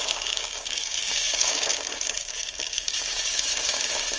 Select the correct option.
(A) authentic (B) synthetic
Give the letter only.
B